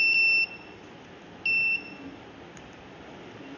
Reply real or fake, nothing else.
real